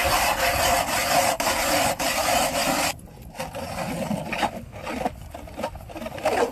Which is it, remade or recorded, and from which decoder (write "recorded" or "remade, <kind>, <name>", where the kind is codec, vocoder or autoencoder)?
recorded